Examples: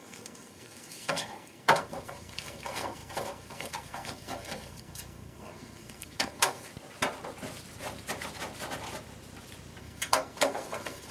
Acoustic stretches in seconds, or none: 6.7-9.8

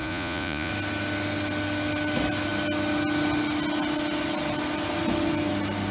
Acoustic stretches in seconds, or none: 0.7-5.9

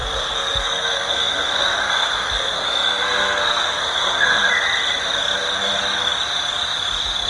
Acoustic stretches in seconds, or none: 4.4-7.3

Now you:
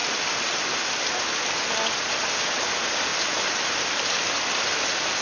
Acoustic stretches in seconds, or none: 0.0-5.2

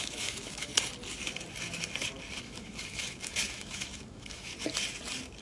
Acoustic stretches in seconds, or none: 0.7-2.4; 4.5-5.4

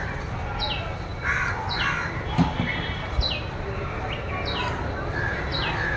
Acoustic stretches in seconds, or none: 0.0-6.0

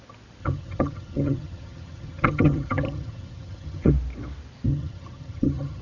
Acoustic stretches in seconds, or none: 0.0-0.4; 3.9-4.7